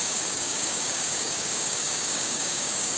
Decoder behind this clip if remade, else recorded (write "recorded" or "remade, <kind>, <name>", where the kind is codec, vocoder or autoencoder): remade, codec, DAC